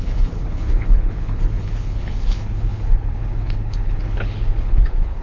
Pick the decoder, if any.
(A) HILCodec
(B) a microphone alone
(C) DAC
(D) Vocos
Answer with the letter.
A